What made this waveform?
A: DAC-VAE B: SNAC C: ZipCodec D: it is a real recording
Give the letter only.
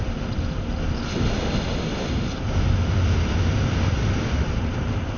D